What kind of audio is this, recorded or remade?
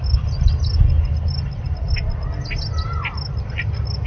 recorded